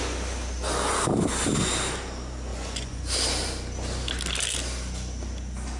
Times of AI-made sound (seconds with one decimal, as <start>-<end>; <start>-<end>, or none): 2.5-3.0